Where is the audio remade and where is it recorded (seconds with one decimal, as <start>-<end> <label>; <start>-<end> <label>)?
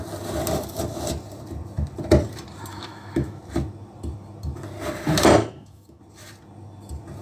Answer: 0.0-2.7 recorded; 2.7-3.4 remade; 3.4-5.4 recorded; 5.4-6.0 remade; 6.0-7.2 recorded